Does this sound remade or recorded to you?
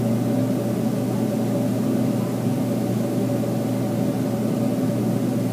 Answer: recorded